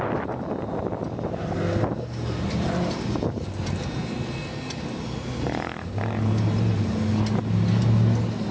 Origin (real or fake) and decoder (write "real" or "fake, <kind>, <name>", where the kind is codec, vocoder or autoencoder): real